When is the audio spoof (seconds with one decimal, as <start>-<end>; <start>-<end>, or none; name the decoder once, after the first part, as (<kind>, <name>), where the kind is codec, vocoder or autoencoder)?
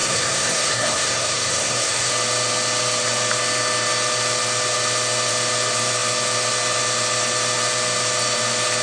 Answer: 0.0-2.1 (codec, SNAC)